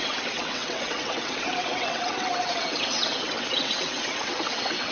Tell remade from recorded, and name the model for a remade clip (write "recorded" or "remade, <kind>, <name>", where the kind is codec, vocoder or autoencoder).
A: remade, vocoder, WaveNeXt